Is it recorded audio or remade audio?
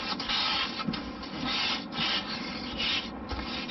recorded